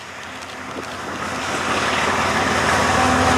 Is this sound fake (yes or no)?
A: no